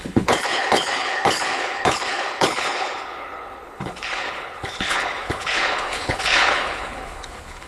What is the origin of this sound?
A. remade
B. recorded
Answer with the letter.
A